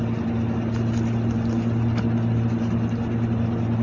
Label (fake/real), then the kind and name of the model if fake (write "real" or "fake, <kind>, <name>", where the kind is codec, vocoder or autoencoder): real